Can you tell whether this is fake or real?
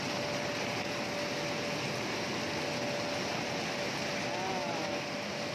real